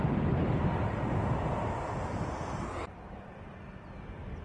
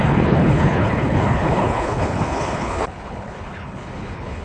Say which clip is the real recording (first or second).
first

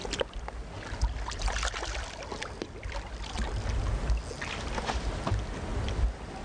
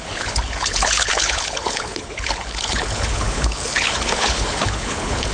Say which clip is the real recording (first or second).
first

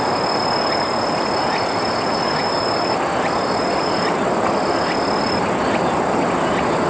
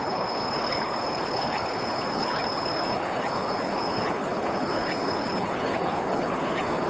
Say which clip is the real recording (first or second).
first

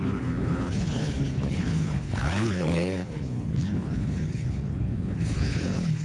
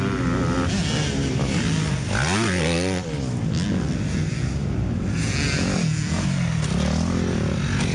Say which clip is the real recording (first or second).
second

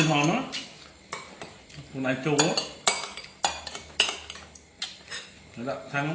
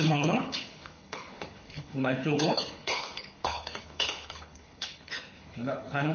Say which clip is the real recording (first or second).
first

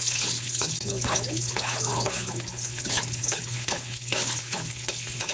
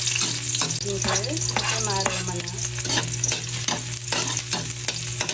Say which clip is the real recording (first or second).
second